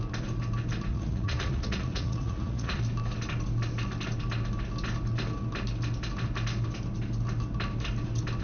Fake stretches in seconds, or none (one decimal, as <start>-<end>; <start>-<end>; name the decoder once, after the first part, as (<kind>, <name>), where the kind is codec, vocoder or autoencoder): 0.9-2.8 (vocoder, Vocos)